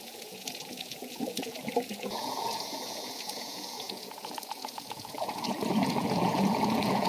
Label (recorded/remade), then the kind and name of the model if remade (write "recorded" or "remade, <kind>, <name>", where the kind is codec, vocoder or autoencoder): remade, vocoder, Vocos